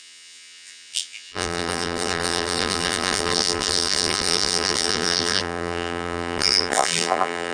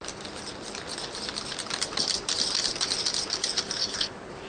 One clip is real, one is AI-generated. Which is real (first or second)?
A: second